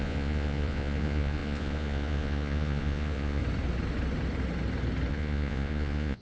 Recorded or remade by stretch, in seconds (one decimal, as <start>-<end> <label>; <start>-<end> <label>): 0.0-3.4 remade; 3.4-5.1 recorded; 5.1-6.2 remade